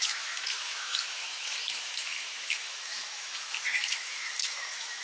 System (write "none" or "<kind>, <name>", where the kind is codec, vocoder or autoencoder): autoencoder, DAC-VAE